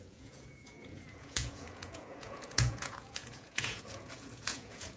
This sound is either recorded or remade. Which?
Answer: remade